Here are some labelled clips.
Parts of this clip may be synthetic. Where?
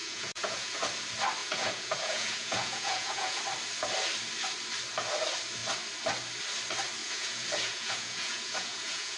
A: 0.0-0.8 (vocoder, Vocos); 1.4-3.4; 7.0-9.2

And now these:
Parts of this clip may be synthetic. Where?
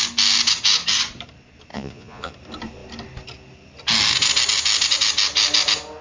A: 1.7-2.3 (vocoder, Vocos)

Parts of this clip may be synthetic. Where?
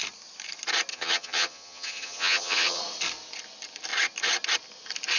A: 0.9-2.8 (vocoder, HiFi-GAN)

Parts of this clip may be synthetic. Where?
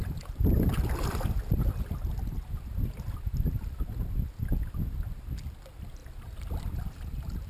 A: none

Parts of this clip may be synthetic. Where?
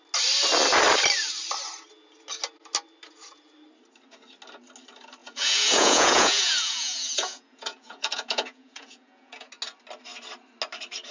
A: 5.2-9.5 (vocoder, Vocos)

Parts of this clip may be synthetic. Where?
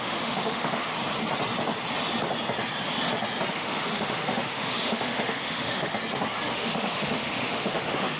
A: 0.0-0.9 (autoencoder, DAC-VAE); 3.5-5.9; 6.5-8.2